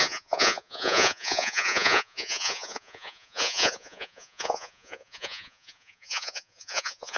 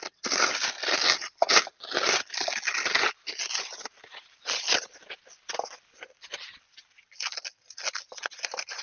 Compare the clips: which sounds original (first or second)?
second